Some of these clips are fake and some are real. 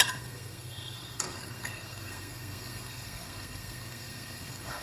fake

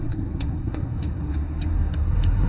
fake